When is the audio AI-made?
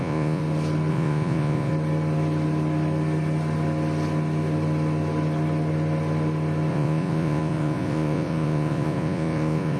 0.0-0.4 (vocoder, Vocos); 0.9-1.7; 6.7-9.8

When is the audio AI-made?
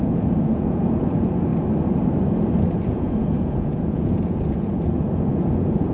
0.0-1.5 (vocoder, Vocos); 2.8-5.9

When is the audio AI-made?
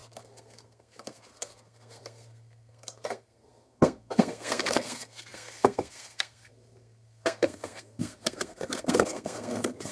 0.0-9.9 (codec, SNAC)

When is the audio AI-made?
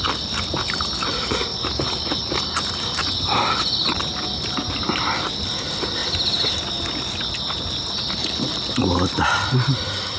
none